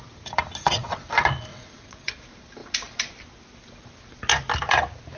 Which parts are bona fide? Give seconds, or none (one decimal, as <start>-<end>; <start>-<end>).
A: 0.0-0.6; 1.1-1.5; 2.1-5.2